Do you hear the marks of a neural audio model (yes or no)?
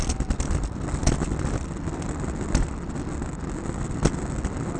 no